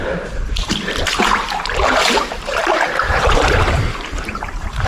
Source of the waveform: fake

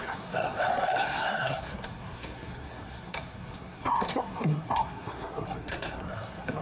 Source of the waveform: fake